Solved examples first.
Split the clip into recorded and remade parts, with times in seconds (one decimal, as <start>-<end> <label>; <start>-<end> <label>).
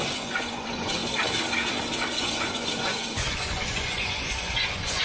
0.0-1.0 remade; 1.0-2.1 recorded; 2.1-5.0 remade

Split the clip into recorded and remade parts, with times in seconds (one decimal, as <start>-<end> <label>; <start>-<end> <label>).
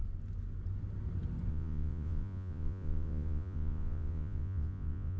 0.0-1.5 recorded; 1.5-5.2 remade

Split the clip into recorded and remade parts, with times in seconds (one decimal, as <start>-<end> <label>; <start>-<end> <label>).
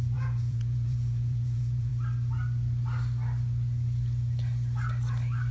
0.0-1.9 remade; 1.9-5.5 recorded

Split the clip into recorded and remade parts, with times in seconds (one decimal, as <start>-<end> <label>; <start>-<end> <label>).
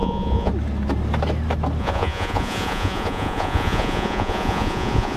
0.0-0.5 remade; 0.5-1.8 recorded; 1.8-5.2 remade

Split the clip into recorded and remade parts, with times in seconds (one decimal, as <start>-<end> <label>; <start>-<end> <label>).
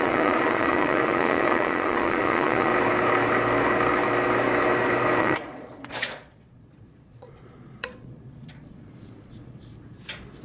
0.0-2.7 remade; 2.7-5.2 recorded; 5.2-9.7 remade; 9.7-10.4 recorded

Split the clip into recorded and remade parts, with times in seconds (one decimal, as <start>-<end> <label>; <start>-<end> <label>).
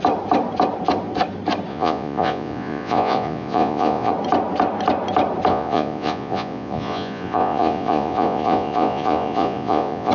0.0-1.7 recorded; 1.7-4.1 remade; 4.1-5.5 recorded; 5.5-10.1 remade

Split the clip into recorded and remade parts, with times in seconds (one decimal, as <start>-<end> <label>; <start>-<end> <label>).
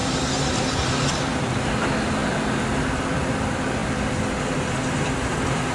0.0-5.7 recorded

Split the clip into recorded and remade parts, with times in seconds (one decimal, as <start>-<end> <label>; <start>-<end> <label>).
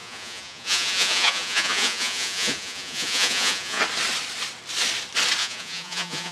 0.0-3.8 remade; 3.8-5.4 recorded; 5.4-6.3 remade